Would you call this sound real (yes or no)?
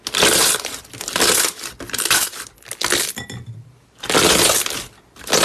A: yes